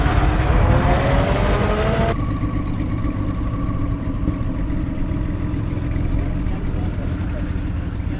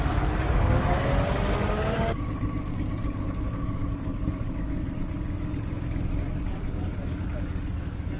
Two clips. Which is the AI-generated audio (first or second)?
second